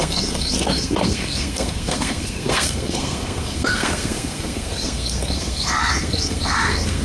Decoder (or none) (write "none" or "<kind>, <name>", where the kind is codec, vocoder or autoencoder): codec, SNAC